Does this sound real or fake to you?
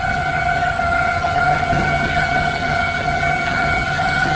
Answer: fake